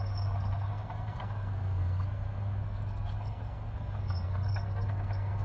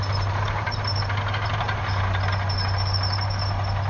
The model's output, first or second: first